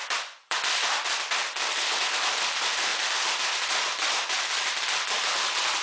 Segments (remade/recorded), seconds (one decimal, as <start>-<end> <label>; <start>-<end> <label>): 0.0-0.9 remade; 0.9-1.4 recorded; 1.4-1.9 remade; 1.9-5.8 recorded